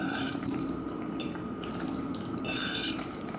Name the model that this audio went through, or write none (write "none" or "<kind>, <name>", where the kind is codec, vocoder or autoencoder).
vocoder, BigVGAN v2